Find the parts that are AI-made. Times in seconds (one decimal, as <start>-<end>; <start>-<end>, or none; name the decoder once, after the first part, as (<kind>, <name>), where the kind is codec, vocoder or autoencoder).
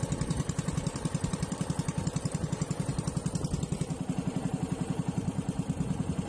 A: 0.0-2.9 (vocoder, BigVGAN v2); 4.5-6.3